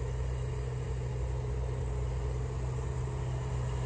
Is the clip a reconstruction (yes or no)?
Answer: no